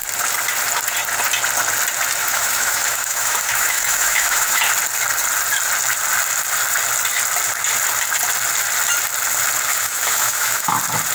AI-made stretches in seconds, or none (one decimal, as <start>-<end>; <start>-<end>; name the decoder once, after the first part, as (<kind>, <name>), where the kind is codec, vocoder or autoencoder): 2.2-4.6 (autoencoder, DAC-VAE); 9.7-10.7